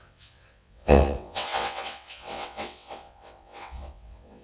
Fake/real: fake